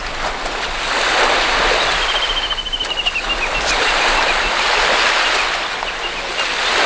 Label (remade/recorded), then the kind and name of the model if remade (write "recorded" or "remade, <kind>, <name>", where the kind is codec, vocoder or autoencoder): recorded